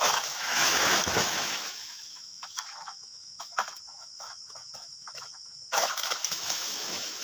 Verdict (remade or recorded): remade